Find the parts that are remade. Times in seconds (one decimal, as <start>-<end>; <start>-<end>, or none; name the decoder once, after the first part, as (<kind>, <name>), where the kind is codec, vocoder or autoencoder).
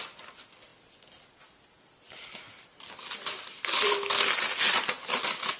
none